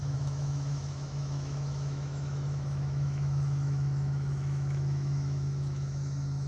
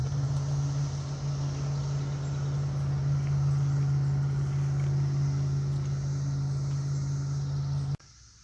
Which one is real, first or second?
second